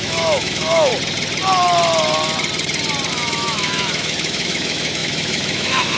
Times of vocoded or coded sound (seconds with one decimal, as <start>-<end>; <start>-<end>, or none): 0.0-0.9; 3.1-6.0